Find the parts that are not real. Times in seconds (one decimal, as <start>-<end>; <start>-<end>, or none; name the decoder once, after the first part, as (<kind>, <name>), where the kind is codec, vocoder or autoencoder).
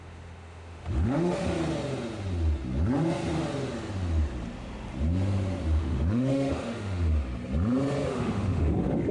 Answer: 0.0-1.4 (autoencoder, DAC-VAE); 5.8-7.1; 8.1-9.1